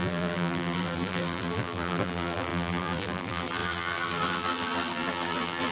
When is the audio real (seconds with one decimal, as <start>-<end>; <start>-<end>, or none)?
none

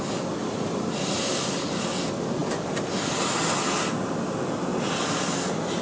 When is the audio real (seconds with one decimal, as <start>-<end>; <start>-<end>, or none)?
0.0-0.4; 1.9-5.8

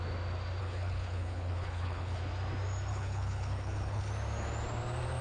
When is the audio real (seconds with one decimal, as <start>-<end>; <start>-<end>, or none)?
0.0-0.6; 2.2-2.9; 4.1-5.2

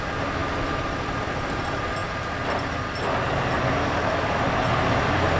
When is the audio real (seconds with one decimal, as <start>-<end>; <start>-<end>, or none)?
0.4-1.1; 2.0-5.0

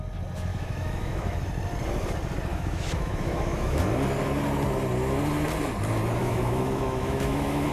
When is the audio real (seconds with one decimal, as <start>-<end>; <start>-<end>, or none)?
0.0-0.5; 1.4-2.5; 3.8-6.2

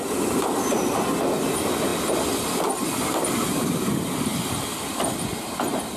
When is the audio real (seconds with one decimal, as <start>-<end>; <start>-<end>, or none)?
0.0-4.3; 5.1-6.0

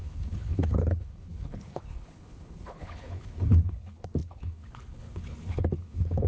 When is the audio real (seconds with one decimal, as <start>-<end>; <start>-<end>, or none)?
none